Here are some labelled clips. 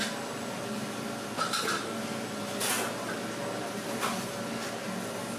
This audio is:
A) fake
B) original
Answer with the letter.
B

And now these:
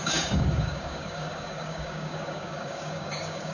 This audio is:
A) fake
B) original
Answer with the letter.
A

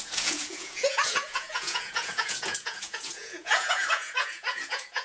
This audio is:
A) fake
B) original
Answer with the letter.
A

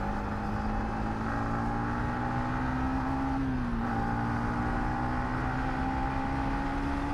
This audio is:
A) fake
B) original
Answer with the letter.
B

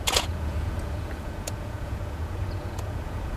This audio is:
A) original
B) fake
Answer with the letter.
B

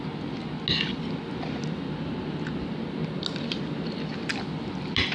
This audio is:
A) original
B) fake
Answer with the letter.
A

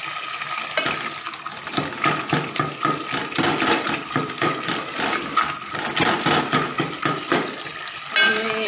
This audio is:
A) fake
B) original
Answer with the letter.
B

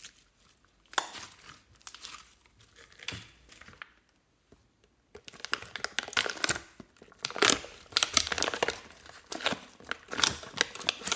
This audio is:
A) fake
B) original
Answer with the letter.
B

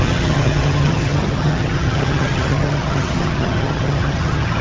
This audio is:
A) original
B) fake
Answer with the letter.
B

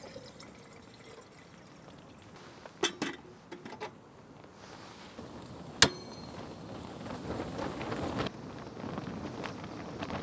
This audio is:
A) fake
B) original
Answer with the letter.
B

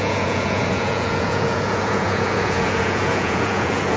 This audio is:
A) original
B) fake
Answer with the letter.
B